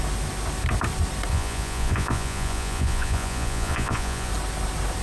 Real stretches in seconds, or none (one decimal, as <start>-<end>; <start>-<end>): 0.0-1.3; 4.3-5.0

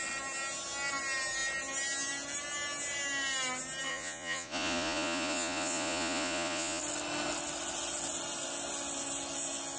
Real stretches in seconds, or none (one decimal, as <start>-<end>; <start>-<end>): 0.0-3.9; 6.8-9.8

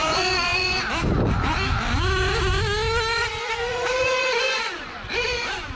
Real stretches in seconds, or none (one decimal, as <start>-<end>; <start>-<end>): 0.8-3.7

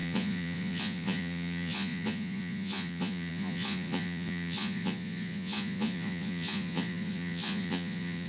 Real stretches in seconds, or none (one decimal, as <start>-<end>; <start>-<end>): none

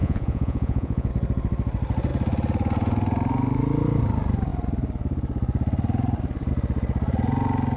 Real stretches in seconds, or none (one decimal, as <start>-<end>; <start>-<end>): 1.1-7.8

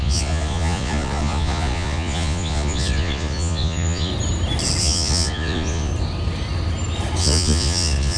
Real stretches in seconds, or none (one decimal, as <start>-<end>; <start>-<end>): 4.1-4.8; 5.9-7.2